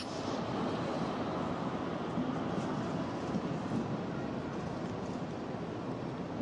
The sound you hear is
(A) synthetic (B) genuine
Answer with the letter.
B